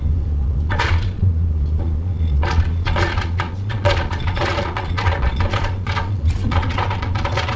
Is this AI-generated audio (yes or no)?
yes